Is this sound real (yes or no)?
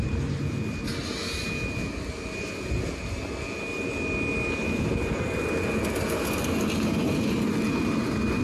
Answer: yes